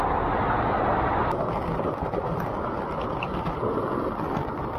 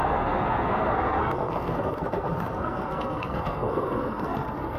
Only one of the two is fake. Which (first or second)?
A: second